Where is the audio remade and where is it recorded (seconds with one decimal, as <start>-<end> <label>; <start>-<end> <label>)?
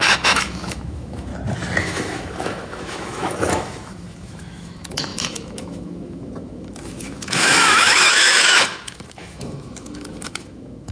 0.0-1.3 remade; 1.3-1.8 recorded; 1.8-10.9 remade